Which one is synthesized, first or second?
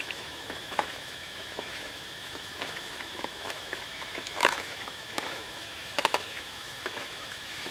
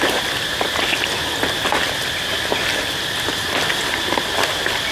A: first